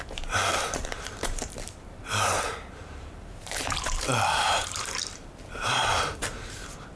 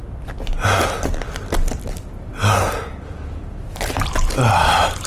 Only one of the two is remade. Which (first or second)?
first